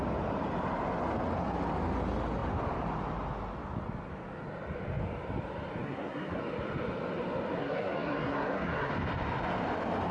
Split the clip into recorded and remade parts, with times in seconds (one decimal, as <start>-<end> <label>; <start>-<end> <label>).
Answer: 0.0-5.8 recorded; 5.8-6.4 remade; 6.4-7.6 recorded; 7.6-8.9 remade; 8.9-10.1 recorded